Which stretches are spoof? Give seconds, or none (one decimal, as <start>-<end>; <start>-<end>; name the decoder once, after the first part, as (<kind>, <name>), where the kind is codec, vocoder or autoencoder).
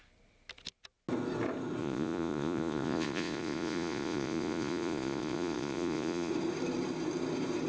1.8-6.3 (vocoder, Vocos)